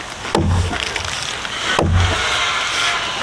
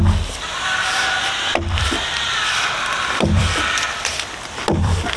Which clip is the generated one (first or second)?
second